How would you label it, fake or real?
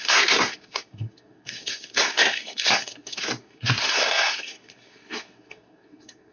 fake